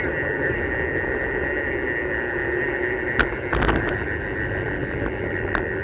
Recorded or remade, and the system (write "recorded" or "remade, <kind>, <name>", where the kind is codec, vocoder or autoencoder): recorded